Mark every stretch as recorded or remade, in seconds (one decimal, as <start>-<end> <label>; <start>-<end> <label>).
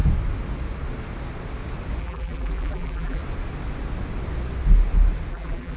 0.0-2.0 recorded; 2.0-3.2 remade; 3.2-5.3 recorded; 5.3-5.8 remade